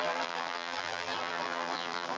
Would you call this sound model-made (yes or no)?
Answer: yes